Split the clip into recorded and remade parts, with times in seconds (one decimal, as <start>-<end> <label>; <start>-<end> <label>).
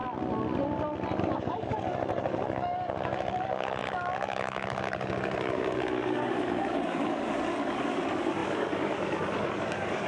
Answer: 0.0-1.2 recorded; 1.2-10.1 remade